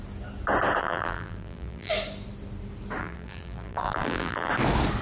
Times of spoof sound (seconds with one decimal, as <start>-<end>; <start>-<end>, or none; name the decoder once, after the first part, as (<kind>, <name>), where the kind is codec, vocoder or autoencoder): 0.8-1.9 (vocoder, BigVGAN v2); 3.0-4.5